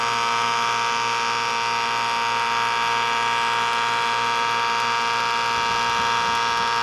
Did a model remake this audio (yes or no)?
no